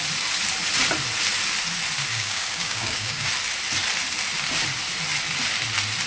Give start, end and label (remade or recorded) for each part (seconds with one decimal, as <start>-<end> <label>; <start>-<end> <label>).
0.0-2.1 recorded; 2.1-3.3 remade; 3.3-6.1 recorded

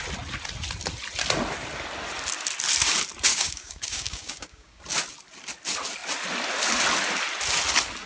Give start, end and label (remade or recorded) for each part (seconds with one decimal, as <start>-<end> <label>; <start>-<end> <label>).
0.0-3.3 recorded; 3.3-4.8 remade; 4.8-8.1 recorded

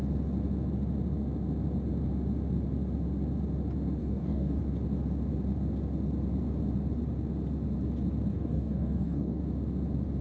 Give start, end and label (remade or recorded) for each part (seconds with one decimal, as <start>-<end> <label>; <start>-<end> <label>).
0.0-4.0 recorded; 4.0-4.6 remade; 4.6-8.3 recorded; 8.3-9.4 remade; 9.4-10.2 recorded